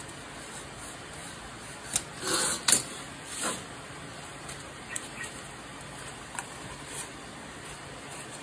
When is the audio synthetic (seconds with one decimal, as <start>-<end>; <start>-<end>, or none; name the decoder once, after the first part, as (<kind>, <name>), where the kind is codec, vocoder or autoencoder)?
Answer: none